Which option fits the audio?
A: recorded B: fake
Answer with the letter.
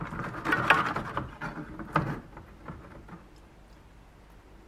A